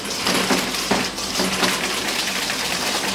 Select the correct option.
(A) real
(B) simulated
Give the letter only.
B